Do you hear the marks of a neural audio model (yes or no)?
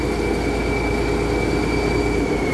no